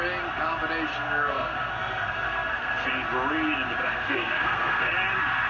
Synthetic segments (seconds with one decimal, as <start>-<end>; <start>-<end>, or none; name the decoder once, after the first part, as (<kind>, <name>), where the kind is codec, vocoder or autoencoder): 0.9-2.9 (codec, SNAC); 3.8-4.9